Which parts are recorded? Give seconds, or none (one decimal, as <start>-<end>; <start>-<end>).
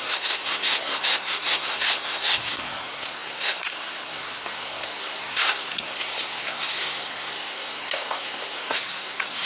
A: none